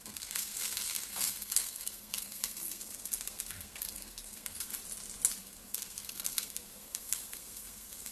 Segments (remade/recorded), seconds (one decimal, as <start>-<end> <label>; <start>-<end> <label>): 0.0-4.7 remade; 4.7-5.4 recorded; 5.4-8.1 remade